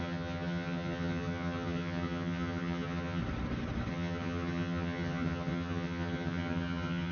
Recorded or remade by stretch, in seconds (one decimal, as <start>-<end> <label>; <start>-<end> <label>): 0.0-3.2 remade; 3.2-3.9 recorded; 3.9-7.1 remade